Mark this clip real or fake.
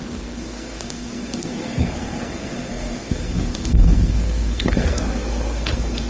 fake